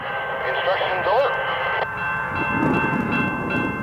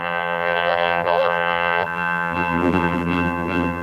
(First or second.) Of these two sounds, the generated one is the second